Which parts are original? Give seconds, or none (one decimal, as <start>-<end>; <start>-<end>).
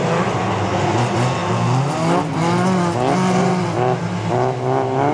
0.0-5.1